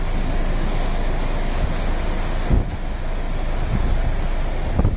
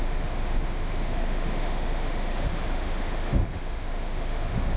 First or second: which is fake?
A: second